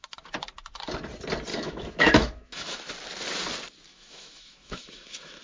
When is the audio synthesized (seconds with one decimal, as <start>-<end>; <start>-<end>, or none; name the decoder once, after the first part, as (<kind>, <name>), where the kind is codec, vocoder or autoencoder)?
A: 1.5-2.9 (autoencoder, DAC-VAE); 3.9-5.4